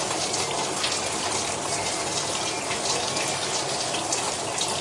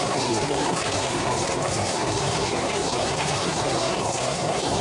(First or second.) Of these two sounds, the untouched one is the first